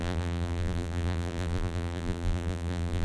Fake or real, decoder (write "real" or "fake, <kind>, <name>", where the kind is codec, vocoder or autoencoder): fake, vocoder, BigVGAN v2